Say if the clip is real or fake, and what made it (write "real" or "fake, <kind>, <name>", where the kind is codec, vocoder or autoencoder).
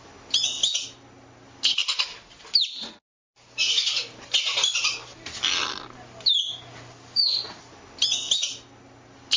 real